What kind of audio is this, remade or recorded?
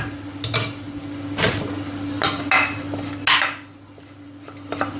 recorded